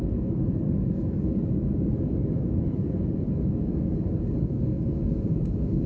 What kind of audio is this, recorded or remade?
remade